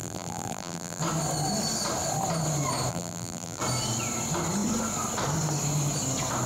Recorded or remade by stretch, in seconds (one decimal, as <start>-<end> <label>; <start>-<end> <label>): 0.0-1.0 remade; 1.0-2.9 recorded; 2.9-3.6 remade; 3.6-6.5 recorded